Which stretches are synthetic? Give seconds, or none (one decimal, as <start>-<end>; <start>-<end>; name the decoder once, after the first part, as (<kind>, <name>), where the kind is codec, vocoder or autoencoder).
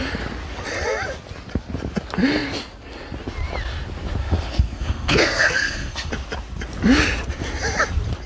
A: 4.2-6.1 (codec, SNAC)